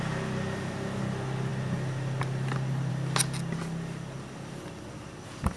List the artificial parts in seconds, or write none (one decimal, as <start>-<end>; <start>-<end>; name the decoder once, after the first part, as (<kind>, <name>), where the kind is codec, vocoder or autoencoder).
none

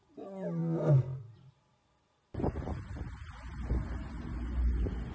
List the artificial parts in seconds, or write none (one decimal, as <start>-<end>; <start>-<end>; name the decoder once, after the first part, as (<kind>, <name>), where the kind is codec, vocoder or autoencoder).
none

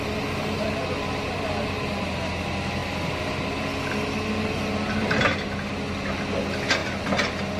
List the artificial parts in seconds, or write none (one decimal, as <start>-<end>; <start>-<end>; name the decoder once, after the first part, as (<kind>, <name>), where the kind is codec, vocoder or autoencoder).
none

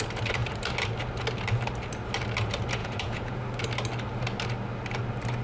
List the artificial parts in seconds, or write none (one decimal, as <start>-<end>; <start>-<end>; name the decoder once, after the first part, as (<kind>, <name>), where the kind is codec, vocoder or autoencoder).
2.8-3.4 (vocoder, Vocos)

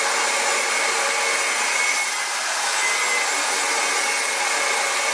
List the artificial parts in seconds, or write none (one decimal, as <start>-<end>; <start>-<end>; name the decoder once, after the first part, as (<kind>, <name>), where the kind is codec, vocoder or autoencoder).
none

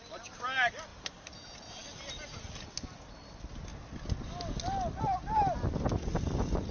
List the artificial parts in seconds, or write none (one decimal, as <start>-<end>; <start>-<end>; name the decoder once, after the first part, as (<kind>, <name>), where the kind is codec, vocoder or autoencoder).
none

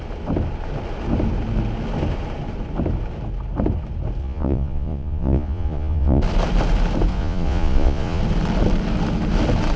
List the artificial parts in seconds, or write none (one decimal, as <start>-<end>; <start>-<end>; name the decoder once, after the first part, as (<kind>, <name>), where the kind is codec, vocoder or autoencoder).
4.2-6.2 (vocoder, Vocos); 7.1-8.2

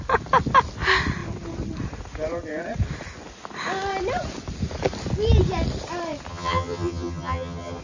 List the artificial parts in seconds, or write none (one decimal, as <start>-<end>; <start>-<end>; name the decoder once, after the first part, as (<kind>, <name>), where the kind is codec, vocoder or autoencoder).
6.3-7.8 (vocoder, HiFi-GAN)